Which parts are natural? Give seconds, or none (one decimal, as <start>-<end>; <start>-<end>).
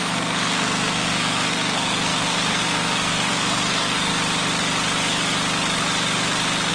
4.1-6.7